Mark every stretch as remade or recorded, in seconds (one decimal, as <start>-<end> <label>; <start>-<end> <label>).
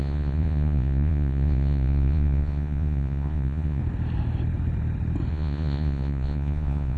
0.0-3.8 remade; 3.8-5.3 recorded; 5.3-7.0 remade